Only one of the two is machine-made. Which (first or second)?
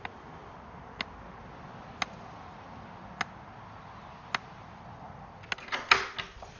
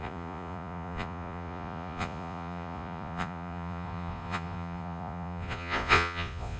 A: second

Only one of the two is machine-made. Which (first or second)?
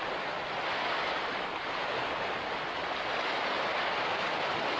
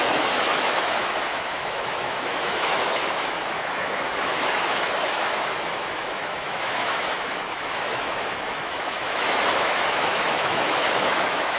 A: second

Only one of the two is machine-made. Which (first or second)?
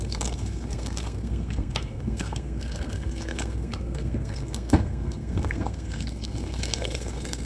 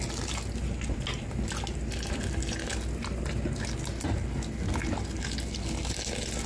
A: first